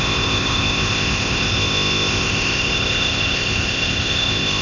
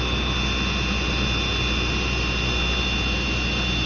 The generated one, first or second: first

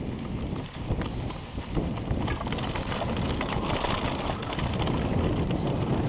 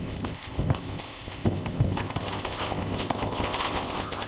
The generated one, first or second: second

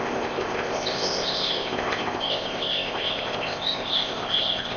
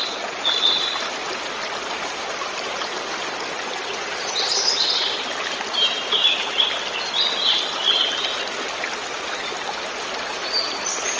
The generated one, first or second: first